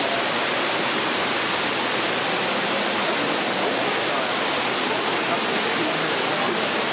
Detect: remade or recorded recorded